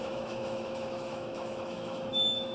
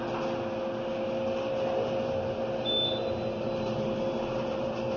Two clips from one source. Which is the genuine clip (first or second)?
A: second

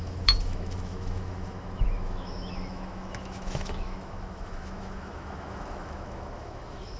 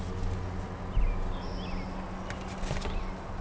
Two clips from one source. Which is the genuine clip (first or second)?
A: second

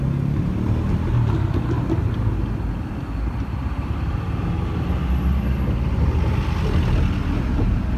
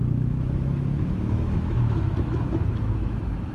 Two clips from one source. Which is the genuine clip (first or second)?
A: first